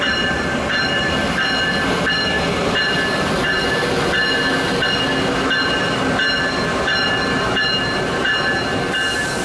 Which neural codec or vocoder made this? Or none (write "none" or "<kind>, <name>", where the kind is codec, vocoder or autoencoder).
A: none